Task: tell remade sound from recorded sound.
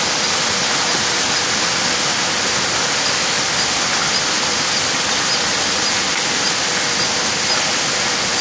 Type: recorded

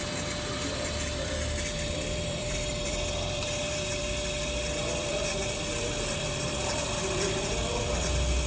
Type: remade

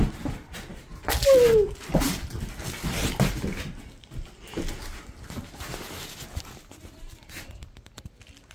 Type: recorded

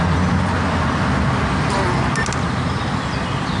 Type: recorded